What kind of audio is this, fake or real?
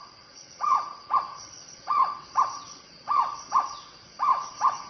fake